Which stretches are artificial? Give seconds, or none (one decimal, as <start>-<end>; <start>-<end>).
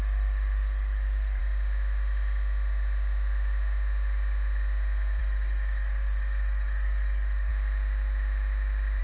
0.0-1.4; 5.2-7.5